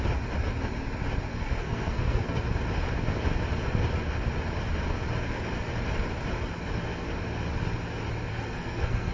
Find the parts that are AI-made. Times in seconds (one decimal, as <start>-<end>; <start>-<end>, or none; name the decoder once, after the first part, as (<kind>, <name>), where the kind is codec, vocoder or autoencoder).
1.3-2.4 (codec, SNAC); 8.3-9.1